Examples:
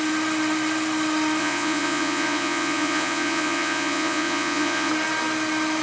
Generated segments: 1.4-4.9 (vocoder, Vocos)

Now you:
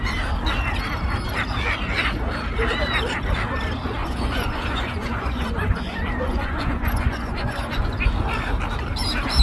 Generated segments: 4.0-8.1 (vocoder, Vocos)